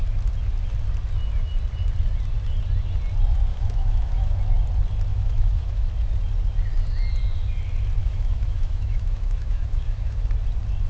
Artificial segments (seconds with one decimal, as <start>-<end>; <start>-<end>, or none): 3.5-4.4; 5.1-5.9; 8.0-10.2